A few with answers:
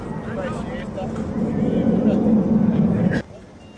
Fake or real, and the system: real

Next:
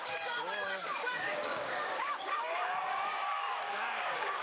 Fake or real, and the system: fake, codec, DAC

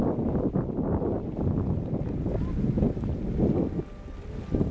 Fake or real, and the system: real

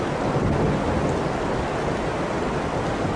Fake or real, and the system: real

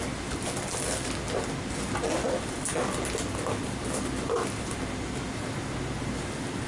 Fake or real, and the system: real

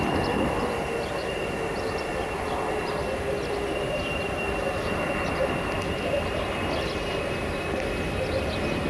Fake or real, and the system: real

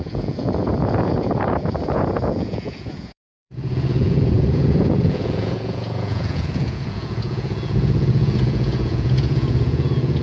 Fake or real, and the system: fake, vocoder, Vocos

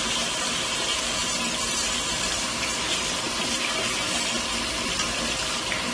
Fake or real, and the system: fake, vocoder, BigVGAN v2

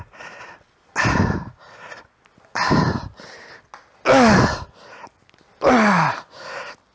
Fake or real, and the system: real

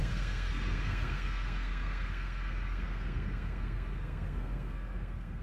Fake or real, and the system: fake, codec, SNAC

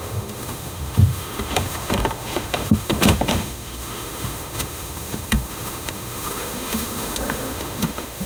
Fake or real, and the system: fake, autoencoder, DAC-VAE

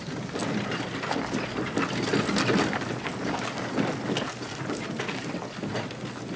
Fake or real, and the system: real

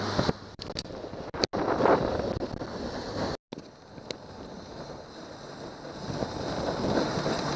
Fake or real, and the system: real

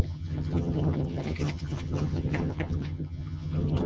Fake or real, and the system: fake, vocoder, HiFi-GAN